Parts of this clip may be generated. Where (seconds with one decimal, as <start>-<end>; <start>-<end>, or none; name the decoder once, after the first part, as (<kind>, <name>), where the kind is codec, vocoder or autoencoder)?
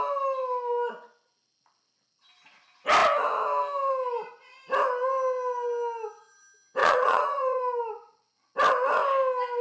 6.8-7.6 (vocoder, Vocos)